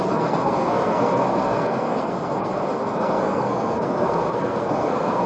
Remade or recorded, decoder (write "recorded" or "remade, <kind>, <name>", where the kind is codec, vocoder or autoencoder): remade, codec, SNAC